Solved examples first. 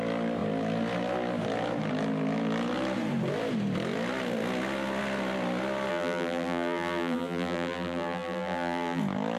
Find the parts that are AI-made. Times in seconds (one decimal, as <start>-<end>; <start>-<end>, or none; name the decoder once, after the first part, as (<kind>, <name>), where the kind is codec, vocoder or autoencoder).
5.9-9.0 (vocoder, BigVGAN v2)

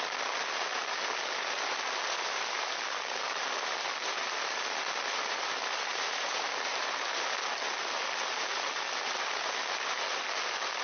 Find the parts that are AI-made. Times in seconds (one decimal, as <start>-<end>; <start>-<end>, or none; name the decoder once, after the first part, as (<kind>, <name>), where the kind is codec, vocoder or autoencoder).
5.9-7.4 (vocoder, BigVGAN v2)

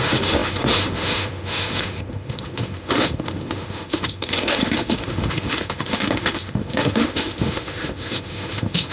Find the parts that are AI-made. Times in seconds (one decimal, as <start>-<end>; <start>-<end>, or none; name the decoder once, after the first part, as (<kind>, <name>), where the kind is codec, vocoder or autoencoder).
0.0-8.9 (autoencoder, DAC-VAE)

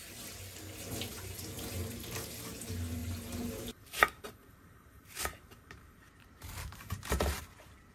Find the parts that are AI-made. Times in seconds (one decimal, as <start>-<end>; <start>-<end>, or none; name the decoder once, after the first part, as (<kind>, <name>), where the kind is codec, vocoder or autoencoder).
1.1-7.9 (vocoder, BigVGAN v2)